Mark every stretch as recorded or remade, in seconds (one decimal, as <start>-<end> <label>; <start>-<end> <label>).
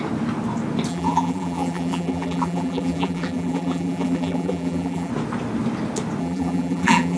0.0-0.9 recorded; 0.9-5.1 remade; 5.1-6.2 recorded; 6.2-7.2 remade